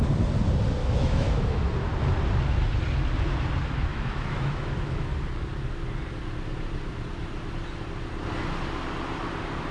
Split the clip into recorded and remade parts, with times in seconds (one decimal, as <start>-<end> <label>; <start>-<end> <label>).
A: 0.0-0.8 recorded; 0.8-1.6 remade; 1.6-3.9 recorded; 3.9-5.1 remade; 5.1-9.7 recorded

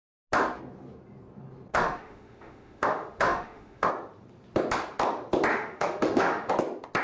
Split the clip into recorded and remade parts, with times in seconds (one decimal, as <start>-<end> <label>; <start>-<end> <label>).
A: 0.0-1.7 recorded; 1.7-3.9 remade; 3.9-5.5 recorded; 5.5-6.5 remade; 6.5-7.0 recorded